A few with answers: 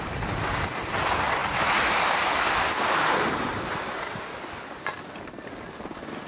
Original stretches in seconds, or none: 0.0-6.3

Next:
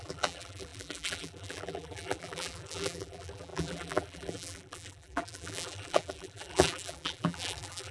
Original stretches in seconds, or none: none

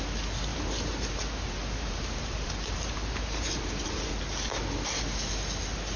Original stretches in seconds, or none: 0.0-0.5; 4.1-6.0

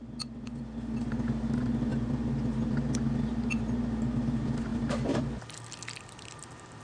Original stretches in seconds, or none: 0.0-4.7

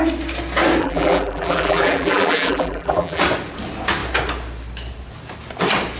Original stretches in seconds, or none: 0.0-0.8; 3.2-6.0